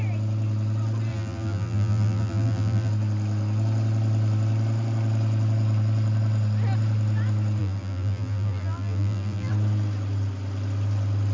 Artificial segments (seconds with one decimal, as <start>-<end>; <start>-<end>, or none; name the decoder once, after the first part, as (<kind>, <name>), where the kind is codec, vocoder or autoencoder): 1.1-2.9 (vocoder, BigVGAN v2); 7.6-9.5

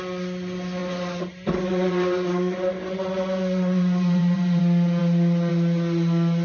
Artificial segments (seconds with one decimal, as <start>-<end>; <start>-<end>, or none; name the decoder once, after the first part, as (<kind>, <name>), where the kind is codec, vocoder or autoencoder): 0.8-4.6 (vocoder, BigVGAN v2)

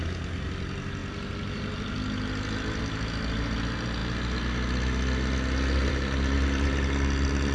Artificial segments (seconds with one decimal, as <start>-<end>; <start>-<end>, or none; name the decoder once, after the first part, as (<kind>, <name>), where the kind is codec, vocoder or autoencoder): none

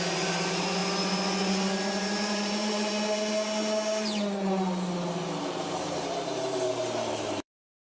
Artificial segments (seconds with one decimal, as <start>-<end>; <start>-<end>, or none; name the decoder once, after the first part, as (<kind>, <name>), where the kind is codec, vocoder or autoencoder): 0.0-0.8 (vocoder, BigVGAN v2); 1.8-2.9; 5.4-7.9